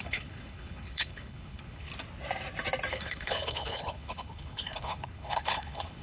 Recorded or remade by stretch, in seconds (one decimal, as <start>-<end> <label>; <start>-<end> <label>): 0.0-1.9 remade; 1.9-2.9 recorded; 2.9-6.0 remade